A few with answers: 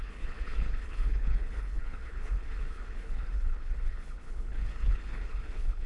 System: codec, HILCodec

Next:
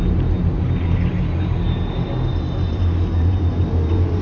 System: none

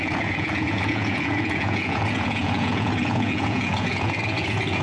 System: vocoder, Vocos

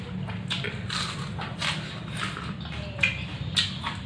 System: none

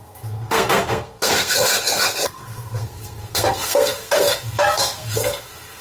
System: codec, SNAC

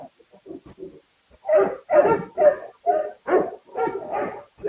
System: none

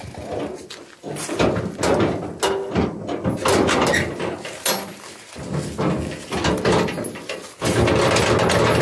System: none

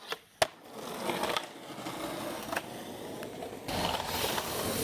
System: none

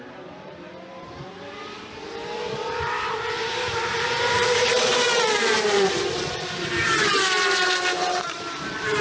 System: vocoder, BigVGAN v2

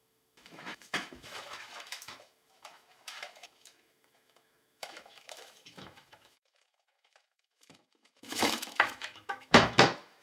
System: autoencoder, DAC-VAE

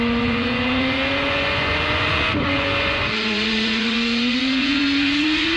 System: vocoder, Vocos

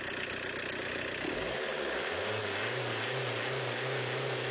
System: none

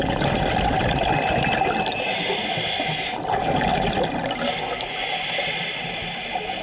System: none